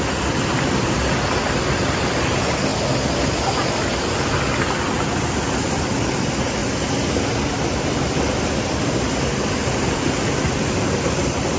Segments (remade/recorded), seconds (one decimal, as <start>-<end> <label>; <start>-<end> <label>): 0.0-11.6 recorded